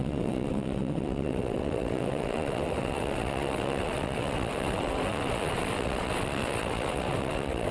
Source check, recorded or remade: remade